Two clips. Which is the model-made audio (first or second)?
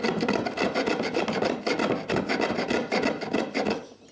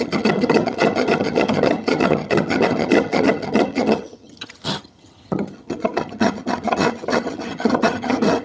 second